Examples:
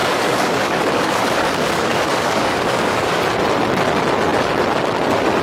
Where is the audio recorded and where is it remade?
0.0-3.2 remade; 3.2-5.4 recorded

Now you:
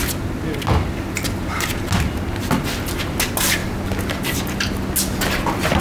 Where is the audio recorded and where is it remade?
0.0-3.6 recorded; 3.6-4.9 remade; 4.9-5.8 recorded